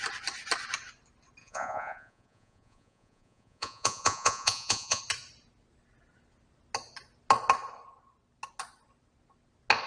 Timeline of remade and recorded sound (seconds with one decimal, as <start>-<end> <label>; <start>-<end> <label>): 0.0-1.4 recorded; 1.4-5.0 remade; 5.0-9.9 recorded